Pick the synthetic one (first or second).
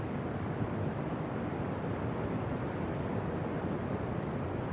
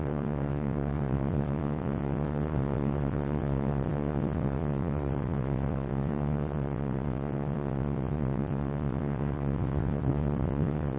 second